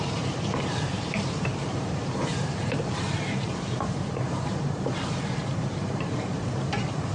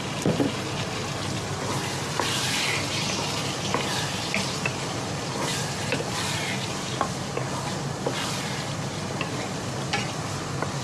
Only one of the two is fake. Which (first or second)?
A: first